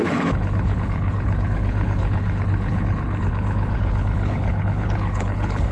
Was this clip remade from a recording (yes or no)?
yes